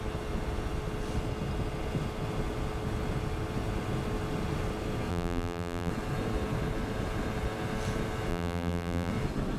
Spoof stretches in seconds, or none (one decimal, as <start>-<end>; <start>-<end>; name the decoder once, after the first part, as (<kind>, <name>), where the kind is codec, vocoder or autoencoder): 5.1-5.9 (vocoder, BigVGAN v2); 8.3-9.1